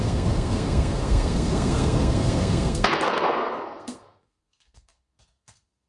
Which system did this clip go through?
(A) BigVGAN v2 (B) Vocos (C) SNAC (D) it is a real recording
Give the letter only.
C